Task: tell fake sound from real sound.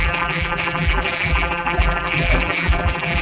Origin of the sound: fake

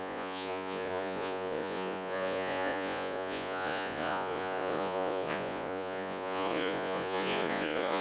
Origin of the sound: fake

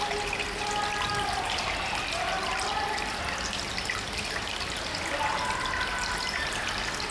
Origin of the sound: real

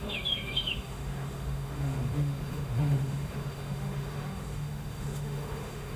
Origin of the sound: fake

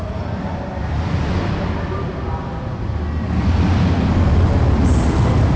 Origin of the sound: real